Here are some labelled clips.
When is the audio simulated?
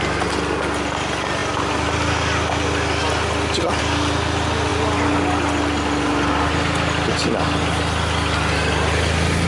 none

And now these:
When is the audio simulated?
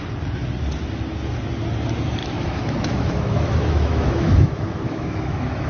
2.2-5.7 (autoencoder, DAC-VAE)